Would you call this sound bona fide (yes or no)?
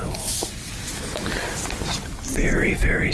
yes